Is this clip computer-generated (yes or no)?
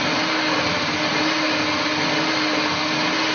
no